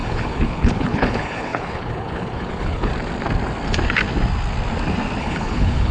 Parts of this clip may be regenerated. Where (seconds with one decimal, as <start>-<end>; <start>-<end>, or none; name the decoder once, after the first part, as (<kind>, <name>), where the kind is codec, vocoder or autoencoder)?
0.0-2.9 (codec, HILCodec); 5.2-5.9